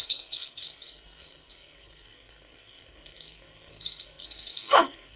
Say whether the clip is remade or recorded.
remade